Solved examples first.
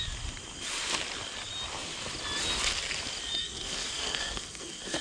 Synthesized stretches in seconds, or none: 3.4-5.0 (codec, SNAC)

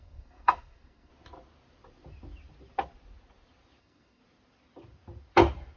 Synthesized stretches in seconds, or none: 0.0-1.1 (codec, SNAC); 3.8-4.2

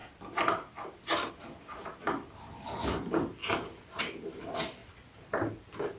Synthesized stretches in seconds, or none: none

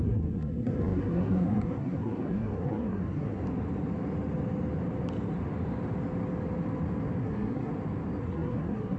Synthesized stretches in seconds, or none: 0.0-3.4 (codec, SNAC); 7.2-7.7; 8.2-9.0

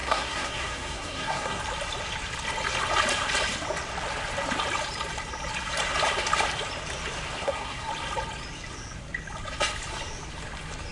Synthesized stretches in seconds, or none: 0.0-1.6 (codec, SNAC); 7.4-7.9